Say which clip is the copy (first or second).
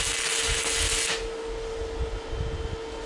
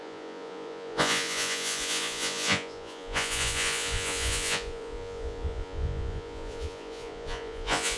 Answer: second